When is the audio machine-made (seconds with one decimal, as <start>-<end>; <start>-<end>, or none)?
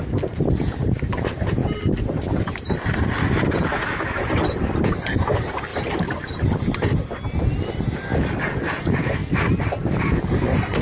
1.6-2.5; 8.1-8.6; 9.2-9.7